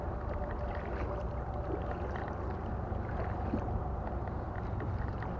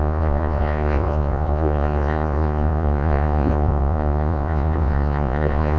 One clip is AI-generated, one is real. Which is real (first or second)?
first